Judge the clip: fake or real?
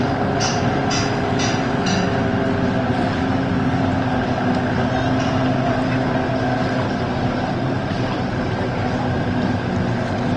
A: real